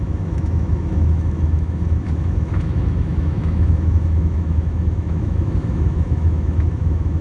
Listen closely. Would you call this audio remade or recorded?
remade